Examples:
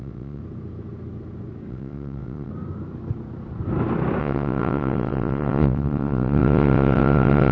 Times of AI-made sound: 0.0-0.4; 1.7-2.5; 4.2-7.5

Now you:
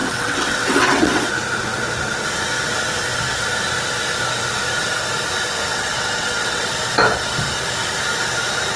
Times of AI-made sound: 0.0-1.3; 5.7-6.7

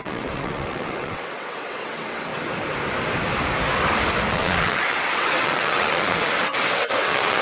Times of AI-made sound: 0.0-2.3; 4.3-7.4

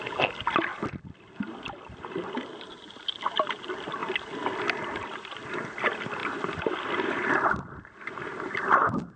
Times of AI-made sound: none